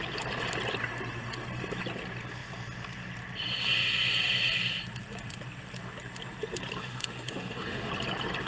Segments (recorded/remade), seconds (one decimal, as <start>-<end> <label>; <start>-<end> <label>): 0.0-6.8 recorded; 6.8-7.9 remade; 7.9-8.5 recorded